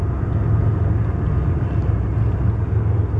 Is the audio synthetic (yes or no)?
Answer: no